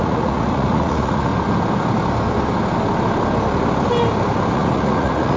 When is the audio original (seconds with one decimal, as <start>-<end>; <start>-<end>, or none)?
1.3-4.5